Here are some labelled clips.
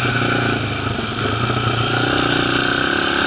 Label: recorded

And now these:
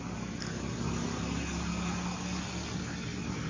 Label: recorded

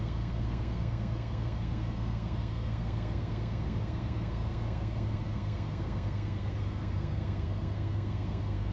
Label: remade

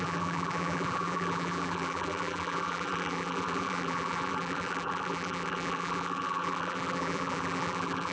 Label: remade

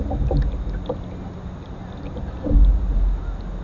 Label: recorded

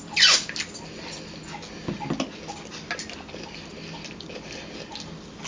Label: recorded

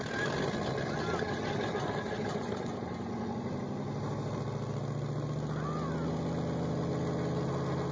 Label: recorded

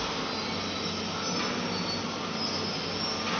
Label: recorded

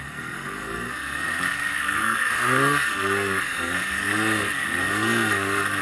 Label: remade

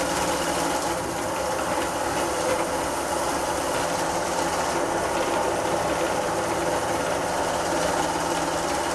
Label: recorded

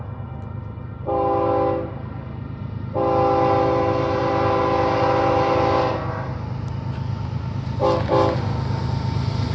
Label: recorded